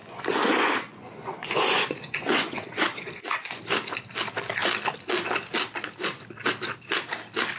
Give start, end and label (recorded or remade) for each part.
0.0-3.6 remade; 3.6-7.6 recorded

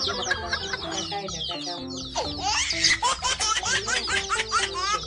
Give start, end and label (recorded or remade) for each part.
0.0-5.1 recorded

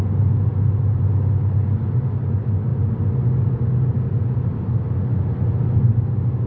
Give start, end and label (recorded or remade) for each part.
0.0-6.5 recorded

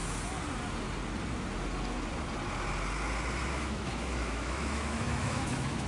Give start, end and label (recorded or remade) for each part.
0.0-3.5 recorded; 3.5-5.9 remade

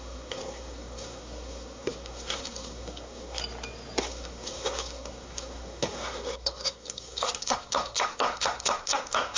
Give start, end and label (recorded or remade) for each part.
0.0-3.4 remade; 3.4-4.0 recorded; 4.0-9.4 remade

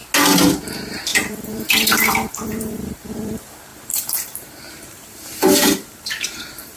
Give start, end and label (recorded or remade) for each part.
0.0-0.6 recorded; 0.6-6.8 remade